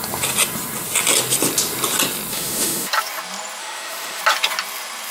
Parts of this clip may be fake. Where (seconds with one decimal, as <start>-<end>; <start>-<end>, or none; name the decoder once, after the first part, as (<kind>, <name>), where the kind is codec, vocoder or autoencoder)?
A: 2.3-2.9 (autoencoder, DAC-VAE); 3.6-4.2